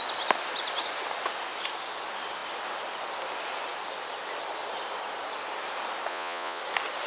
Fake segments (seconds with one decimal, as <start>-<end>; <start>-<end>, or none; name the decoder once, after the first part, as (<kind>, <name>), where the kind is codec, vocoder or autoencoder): 6.1-6.6 (vocoder, Vocos)